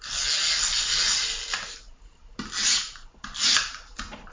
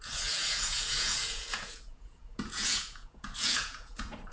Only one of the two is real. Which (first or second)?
first